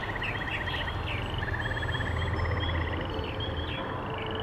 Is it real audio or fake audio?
real